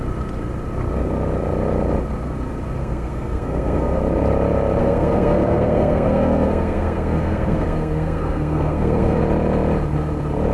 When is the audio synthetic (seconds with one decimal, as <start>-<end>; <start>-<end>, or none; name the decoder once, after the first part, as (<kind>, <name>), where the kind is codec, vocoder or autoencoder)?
2.8-4.0 (codec, SNAC); 4.8-9.2

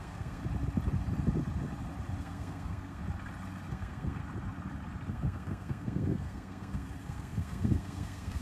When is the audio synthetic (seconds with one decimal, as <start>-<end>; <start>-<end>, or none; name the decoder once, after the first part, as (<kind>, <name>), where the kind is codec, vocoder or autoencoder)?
0.0-0.4 (codec, SNAC); 2.2-3.0; 3.7-4.2; 5.1-8.4

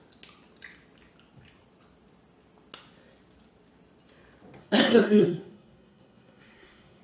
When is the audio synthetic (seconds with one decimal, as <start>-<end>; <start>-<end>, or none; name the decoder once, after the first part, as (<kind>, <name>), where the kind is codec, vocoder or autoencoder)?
4.6-7.0 (codec, SNAC)

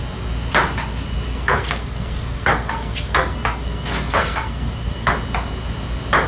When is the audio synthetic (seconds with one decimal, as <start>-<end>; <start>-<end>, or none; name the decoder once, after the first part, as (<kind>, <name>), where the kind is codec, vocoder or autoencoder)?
1.3-5.1 (codec, SNAC)

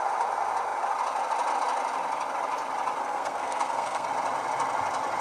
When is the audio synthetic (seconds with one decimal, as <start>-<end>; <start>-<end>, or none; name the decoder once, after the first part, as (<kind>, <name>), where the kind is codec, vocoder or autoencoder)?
3.0-4.1 (codec, SNAC)

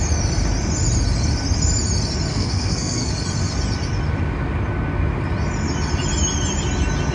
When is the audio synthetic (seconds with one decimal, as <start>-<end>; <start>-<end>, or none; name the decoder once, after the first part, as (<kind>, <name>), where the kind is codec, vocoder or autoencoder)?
2.3-3.1 (codec, SNAC)